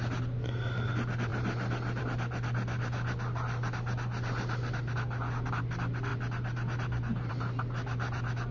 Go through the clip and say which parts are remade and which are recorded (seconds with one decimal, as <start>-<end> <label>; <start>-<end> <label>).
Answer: 0.0-8.5 recorded